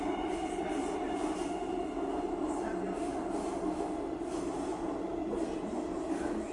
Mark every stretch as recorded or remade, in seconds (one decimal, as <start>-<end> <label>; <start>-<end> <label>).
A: 0.0-6.5 recorded